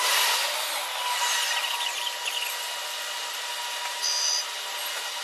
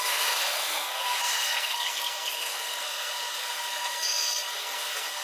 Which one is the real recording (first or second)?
first